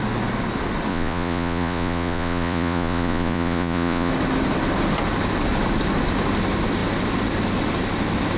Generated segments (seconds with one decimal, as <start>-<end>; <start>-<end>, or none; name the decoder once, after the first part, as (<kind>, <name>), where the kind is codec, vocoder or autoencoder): 0.9-4.1 (vocoder, Vocos)